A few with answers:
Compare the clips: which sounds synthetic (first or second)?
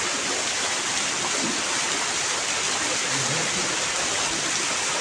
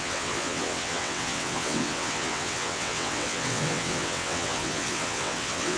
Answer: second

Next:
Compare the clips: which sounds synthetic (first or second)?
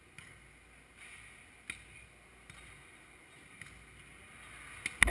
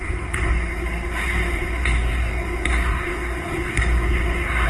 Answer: second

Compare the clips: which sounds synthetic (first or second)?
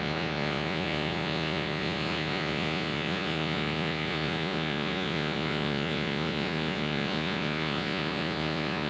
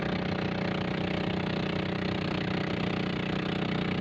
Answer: first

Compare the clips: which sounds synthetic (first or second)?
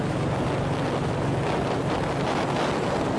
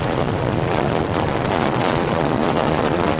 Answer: second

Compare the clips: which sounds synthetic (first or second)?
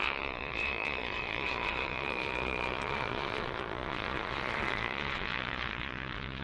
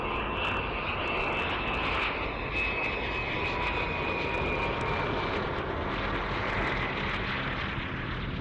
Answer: first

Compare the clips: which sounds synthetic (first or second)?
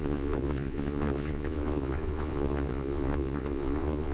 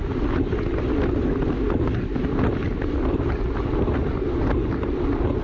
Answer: first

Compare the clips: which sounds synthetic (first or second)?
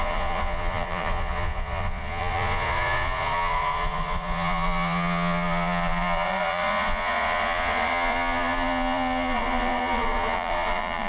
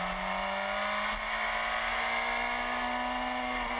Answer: first